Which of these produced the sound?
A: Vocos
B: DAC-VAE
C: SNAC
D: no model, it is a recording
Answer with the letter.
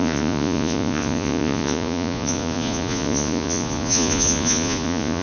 A